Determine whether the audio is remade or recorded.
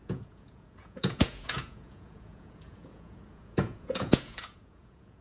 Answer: remade